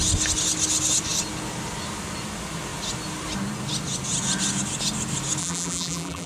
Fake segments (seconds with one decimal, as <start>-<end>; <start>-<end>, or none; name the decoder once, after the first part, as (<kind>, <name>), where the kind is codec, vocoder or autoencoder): 5.4-6.3 (vocoder, BigVGAN v2)